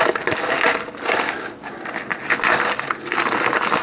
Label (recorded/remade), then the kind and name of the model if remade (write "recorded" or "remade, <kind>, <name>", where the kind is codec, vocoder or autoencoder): recorded